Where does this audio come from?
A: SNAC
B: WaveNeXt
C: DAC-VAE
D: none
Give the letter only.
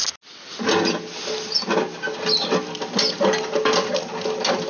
D